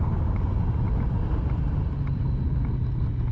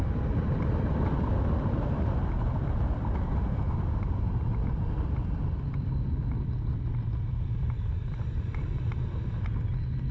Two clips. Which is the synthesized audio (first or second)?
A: second